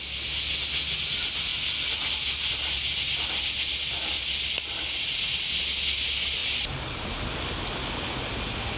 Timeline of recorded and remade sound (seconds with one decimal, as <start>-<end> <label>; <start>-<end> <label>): 0.0-6.4 recorded; 6.4-7.2 remade; 7.2-8.8 recorded